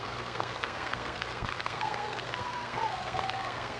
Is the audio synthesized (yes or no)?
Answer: yes